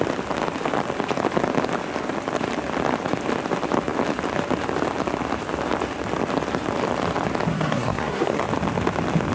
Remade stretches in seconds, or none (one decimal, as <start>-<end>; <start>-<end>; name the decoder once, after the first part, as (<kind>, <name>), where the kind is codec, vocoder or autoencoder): 7.5-8.4 (codec, SNAC)